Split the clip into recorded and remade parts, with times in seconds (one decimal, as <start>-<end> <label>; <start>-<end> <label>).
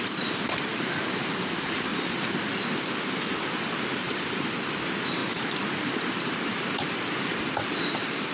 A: 0.0-1.9 remade; 1.9-3.5 recorded; 3.5-5.2 remade; 5.2-6.0 recorded; 6.0-8.3 remade